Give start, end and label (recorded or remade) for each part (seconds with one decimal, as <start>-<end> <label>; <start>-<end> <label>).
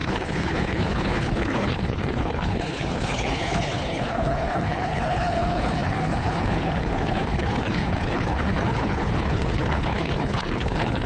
0.0-11.1 remade